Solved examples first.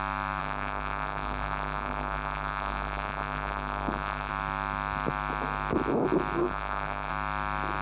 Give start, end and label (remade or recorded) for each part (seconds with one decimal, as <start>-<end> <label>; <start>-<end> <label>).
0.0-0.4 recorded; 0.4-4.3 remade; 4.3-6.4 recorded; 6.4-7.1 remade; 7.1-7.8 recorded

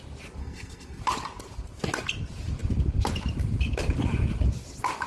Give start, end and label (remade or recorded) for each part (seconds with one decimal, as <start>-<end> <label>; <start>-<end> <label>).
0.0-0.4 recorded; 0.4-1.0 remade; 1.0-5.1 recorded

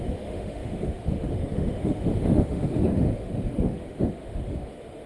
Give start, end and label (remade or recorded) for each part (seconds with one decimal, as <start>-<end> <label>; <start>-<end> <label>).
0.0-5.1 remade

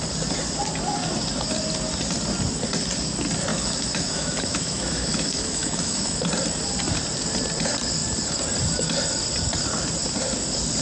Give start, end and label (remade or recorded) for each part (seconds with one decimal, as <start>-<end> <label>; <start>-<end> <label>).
0.0-3.5 recorded; 3.5-6.2 remade; 6.2-10.8 recorded